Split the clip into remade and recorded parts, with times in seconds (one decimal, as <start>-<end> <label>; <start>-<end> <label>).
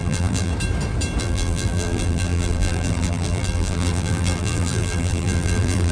0.0-0.5 remade; 0.5-1.2 recorded; 1.2-5.9 remade